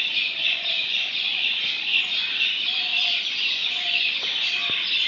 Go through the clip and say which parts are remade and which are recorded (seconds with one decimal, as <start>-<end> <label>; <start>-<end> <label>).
0.0-0.4 recorded; 0.4-2.0 remade; 2.0-2.9 recorded; 2.9-4.2 remade; 4.2-5.1 recorded